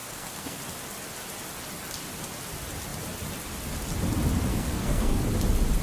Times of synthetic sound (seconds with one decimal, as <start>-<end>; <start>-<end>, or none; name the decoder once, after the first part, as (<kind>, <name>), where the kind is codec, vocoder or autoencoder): 0.0-0.6 (codec, SNAC); 4.5-5.2